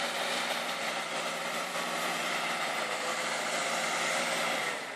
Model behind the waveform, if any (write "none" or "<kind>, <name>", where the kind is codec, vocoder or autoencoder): vocoder, BigVGAN v2